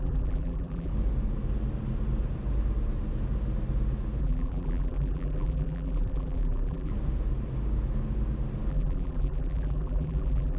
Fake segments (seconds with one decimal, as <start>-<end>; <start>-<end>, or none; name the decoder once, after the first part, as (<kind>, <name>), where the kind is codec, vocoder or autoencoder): 0.0-0.9 (vocoder, BigVGAN v2); 4.2-6.9; 8.7-10.6